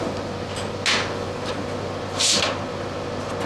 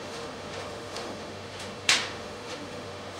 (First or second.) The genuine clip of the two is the first